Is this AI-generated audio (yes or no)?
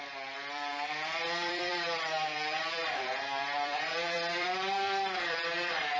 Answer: yes